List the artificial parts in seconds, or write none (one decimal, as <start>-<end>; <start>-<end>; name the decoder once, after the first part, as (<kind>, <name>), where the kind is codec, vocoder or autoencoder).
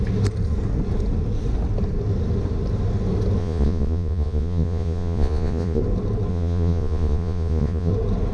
3.4-5.8 (vocoder, Vocos); 6.3-7.9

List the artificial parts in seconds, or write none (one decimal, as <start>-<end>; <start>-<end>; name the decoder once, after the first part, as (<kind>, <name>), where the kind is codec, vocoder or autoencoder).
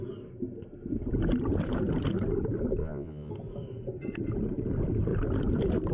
2.8-3.3 (vocoder, Vocos)